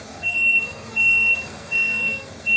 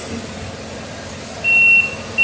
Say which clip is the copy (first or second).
first